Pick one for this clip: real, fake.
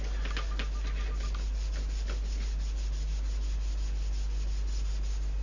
real